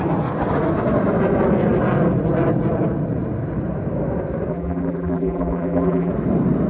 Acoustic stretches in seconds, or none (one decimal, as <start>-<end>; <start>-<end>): 0.0-4.5; 6.1-6.7